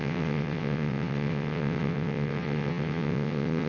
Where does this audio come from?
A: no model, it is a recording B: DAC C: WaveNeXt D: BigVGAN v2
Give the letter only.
C